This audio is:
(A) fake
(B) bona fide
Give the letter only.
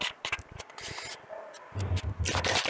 A